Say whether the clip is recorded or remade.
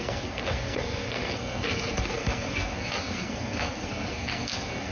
remade